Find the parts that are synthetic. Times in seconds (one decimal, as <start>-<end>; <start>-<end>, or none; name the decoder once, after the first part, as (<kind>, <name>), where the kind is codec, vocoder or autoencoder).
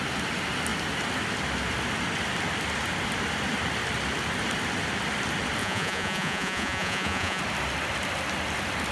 5.6-7.4 (vocoder, Vocos)